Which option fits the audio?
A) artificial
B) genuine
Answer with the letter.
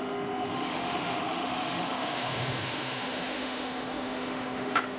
A